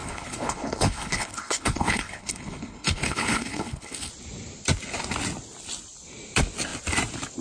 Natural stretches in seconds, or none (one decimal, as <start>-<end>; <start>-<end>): 4.1-7.4